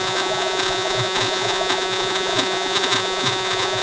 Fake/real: fake